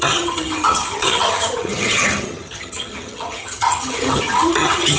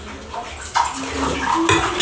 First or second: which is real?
second